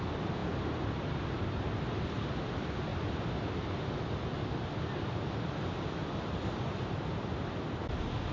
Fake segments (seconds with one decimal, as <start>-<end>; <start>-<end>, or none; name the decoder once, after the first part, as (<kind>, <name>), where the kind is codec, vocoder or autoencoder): none